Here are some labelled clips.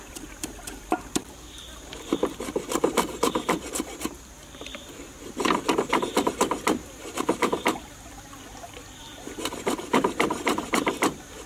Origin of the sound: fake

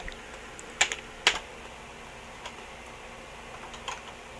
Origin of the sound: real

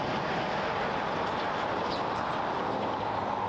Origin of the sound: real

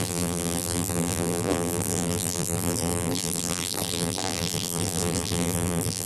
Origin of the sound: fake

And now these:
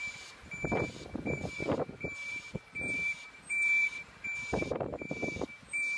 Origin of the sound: fake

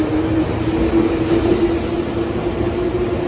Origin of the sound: real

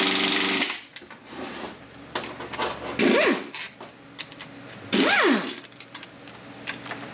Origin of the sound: real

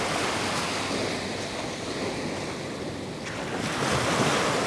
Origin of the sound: real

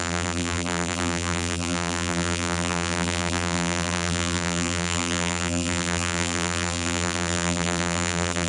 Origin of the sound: fake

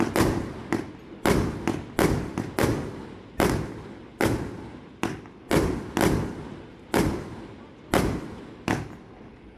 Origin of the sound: real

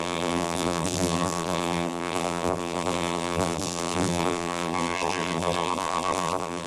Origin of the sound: fake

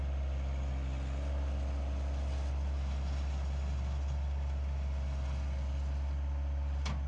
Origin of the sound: real